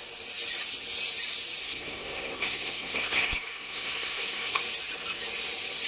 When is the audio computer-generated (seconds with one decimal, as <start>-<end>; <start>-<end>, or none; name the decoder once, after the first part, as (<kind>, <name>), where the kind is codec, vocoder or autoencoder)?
1.6-4.6 (codec, SNAC)